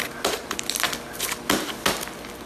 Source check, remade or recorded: recorded